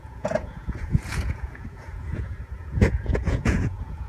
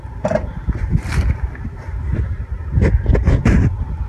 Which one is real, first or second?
second